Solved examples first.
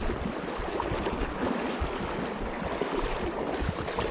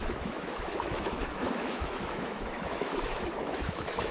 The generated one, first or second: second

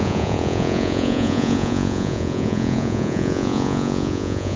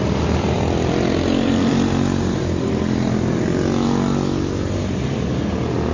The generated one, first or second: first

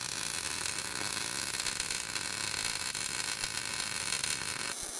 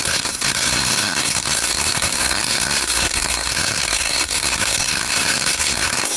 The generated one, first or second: second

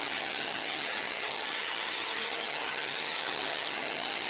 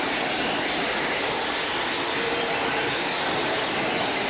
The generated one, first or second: first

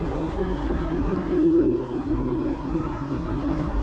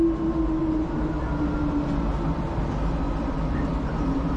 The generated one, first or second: first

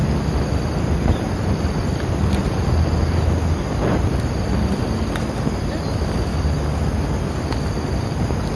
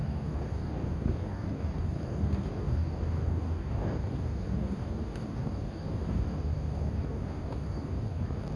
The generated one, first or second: second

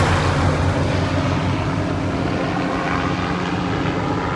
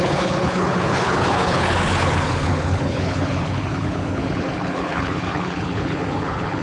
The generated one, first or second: second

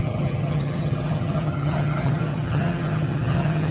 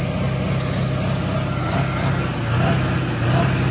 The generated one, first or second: first